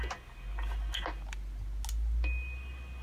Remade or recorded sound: recorded